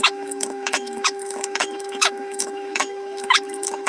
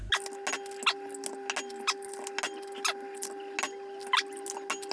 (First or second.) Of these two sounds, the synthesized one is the first